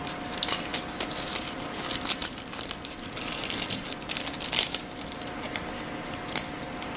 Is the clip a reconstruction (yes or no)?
no